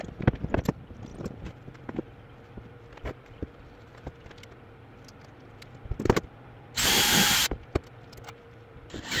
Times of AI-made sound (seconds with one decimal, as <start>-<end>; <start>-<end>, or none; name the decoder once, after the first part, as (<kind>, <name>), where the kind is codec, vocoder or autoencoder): none